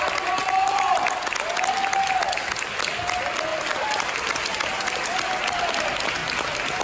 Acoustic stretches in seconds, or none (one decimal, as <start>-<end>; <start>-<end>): 0.0-3.5; 4.7-6.8